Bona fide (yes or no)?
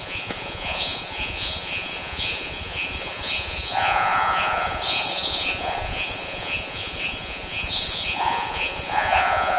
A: no